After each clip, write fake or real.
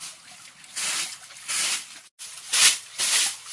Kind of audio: real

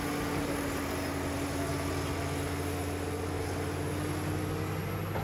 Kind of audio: real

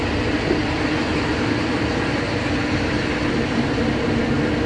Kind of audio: real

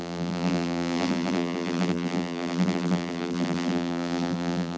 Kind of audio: fake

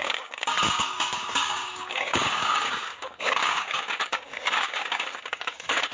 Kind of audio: fake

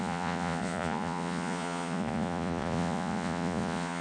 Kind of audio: fake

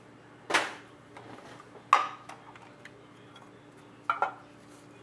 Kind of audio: real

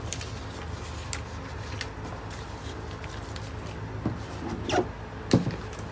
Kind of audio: real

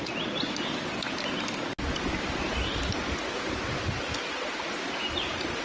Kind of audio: real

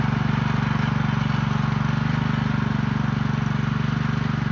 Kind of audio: real